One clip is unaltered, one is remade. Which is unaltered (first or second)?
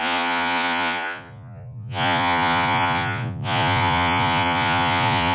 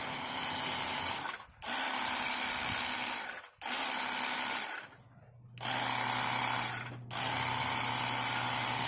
second